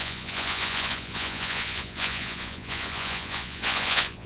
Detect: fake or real fake